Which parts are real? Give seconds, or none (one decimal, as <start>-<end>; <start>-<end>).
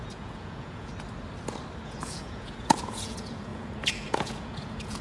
0.9-1.8